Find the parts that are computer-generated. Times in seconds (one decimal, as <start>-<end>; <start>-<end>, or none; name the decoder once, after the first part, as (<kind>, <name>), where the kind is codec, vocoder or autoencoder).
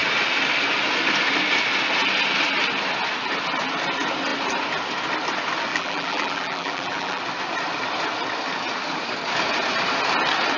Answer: 5.7-7.2 (vocoder, BigVGAN v2)